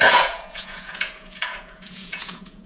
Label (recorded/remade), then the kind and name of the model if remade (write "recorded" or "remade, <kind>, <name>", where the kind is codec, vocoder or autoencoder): remade, vocoder, Vocos